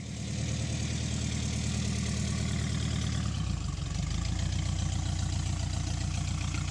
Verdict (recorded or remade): recorded